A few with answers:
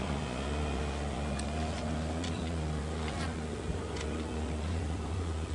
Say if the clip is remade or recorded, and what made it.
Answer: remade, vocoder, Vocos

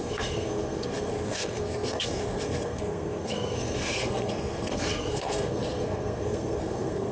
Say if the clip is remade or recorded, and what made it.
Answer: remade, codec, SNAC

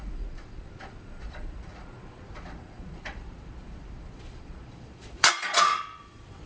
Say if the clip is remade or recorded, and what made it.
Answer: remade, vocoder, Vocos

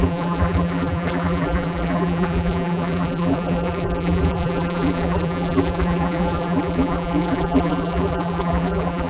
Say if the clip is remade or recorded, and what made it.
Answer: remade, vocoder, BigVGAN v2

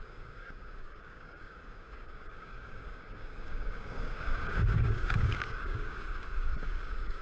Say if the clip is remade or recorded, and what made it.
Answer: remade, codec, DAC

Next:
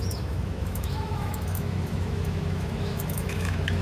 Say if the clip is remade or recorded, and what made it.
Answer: remade, autoencoder, DAC-VAE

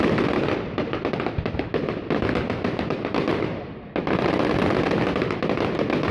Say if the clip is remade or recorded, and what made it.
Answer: recorded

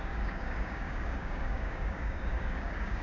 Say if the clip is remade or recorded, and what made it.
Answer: remade, codec, DAC